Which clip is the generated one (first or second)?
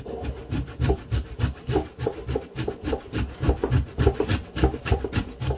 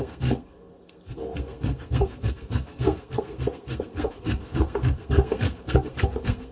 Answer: second